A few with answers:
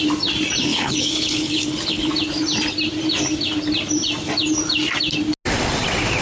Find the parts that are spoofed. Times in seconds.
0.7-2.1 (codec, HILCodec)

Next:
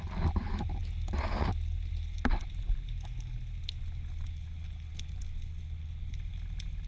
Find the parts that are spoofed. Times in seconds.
none